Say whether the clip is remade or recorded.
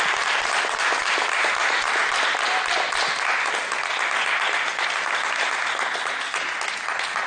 recorded